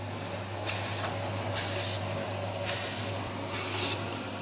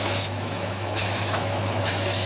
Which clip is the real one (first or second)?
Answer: first